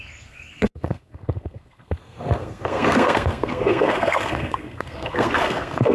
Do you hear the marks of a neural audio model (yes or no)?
yes